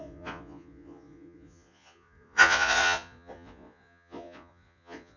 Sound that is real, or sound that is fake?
fake